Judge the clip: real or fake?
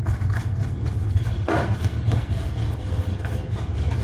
fake